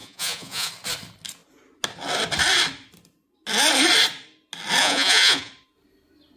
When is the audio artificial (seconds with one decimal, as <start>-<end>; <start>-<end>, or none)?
0.0-0.7; 4.8-5.5